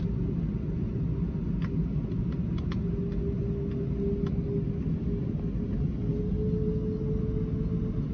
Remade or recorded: recorded